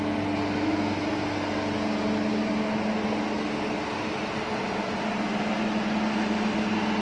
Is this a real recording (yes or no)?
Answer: yes